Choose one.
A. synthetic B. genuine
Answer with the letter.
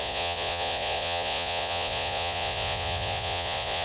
A